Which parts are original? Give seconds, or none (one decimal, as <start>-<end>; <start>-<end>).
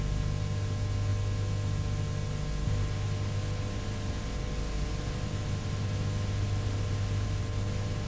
0.0-8.1